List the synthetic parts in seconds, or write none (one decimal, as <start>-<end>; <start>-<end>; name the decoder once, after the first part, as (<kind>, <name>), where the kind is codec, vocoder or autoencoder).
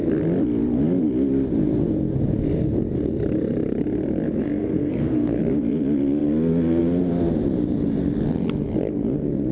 4.4-5.4 (codec, SNAC)